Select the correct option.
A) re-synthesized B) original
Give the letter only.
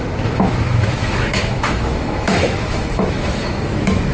A